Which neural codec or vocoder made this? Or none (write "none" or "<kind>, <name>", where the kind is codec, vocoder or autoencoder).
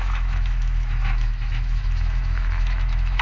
autoencoder, DAC-VAE